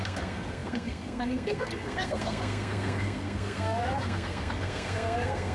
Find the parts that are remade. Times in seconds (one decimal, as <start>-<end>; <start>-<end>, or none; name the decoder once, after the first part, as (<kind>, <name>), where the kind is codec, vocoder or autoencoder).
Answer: 0.0-5.5 (codec, SNAC)

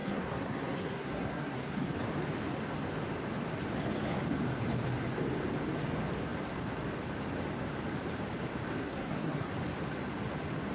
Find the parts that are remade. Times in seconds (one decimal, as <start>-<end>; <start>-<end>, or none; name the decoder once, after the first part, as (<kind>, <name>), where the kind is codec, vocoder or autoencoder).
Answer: 0.0-1.9 (codec, SNAC); 8.8-9.5

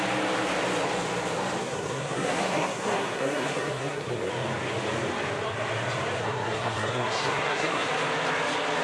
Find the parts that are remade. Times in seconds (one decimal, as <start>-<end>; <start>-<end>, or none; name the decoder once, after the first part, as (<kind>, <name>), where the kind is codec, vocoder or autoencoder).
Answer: 1.6-4.3 (codec, SNAC); 6.2-7.9

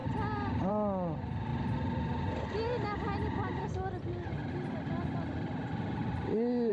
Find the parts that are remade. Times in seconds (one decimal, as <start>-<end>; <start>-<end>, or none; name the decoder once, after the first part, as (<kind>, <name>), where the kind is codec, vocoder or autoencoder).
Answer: none

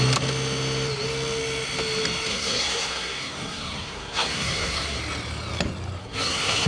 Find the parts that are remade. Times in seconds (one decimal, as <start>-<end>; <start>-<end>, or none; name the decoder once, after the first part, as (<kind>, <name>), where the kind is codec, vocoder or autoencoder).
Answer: 2.3-5.0 (codec, SNAC); 6.0-6.7

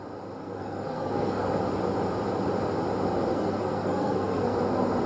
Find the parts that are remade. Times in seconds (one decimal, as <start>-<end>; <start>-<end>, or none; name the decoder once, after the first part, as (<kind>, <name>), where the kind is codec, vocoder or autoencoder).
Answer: 0.4-1.5 (codec, SNAC); 3.3-4.6

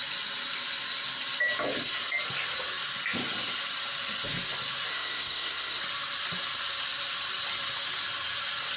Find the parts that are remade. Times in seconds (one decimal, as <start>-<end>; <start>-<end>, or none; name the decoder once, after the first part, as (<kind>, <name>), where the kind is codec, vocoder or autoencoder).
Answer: 4.9-5.8 (codec, SNAC)